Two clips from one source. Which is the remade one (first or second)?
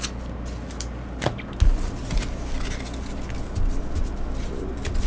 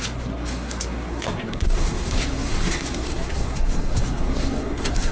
second